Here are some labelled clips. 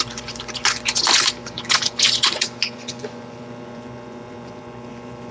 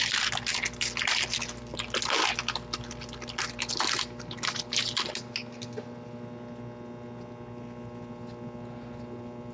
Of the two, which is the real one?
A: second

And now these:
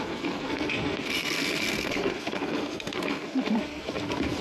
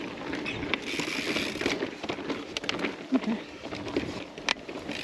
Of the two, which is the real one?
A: second